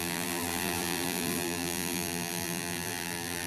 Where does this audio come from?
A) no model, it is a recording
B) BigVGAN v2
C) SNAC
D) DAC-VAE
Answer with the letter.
B